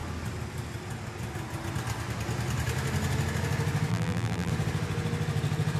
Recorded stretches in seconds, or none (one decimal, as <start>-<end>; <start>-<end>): 0.0-3.9; 4.5-5.8